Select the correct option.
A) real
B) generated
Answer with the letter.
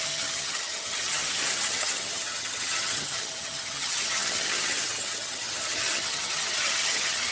B